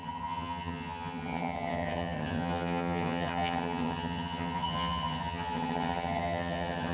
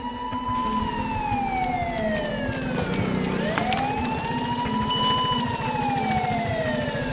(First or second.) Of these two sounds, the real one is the second